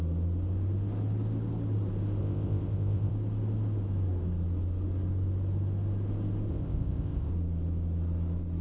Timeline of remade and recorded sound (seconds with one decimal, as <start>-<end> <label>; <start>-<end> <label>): 0.0-2.2 recorded; 2.2-3.1 remade; 3.1-6.5 recorded; 6.5-7.3 remade; 7.3-8.6 recorded